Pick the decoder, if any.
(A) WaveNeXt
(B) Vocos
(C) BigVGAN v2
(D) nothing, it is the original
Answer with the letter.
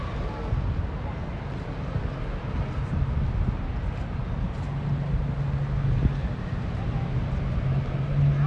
D